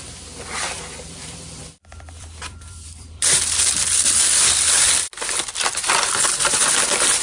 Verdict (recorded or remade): remade